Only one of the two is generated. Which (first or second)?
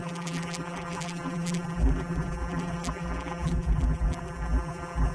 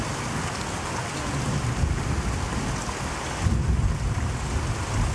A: first